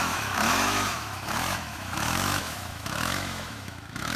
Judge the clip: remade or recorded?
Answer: remade